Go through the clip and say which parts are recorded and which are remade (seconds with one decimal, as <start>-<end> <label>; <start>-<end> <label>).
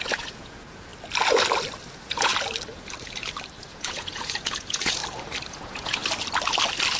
0.0-0.9 remade; 0.9-1.9 recorded; 1.9-2.3 remade; 2.3-3.6 recorded; 3.6-5.0 remade; 5.0-5.5 recorded; 5.5-6.0 remade; 6.0-7.0 recorded